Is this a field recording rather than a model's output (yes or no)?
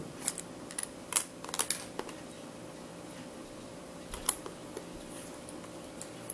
yes